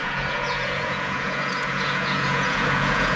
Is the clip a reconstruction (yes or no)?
yes